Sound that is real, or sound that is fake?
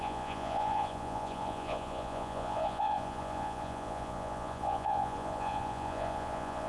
fake